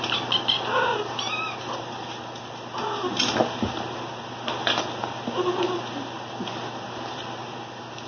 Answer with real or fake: real